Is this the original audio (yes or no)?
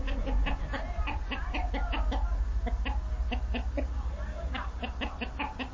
yes